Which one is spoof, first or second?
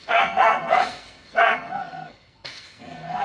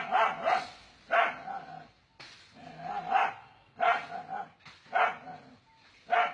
first